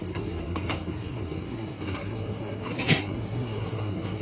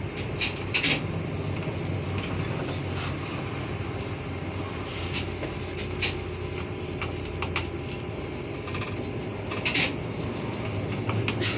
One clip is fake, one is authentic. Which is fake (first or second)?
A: first